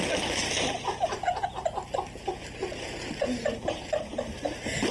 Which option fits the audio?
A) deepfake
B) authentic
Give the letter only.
B